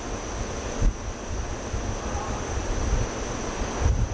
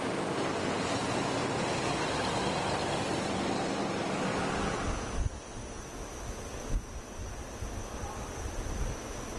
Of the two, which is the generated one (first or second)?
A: second